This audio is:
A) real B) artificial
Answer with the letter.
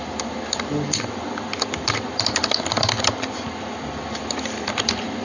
A